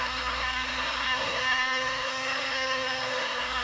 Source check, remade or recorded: remade